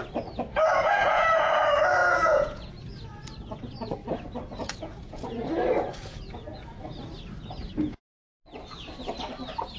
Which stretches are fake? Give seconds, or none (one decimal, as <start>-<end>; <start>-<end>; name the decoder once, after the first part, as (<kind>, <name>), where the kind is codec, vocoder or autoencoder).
0.7-1.5 (vocoder, Vocos); 2.0-2.7; 4.6-5.4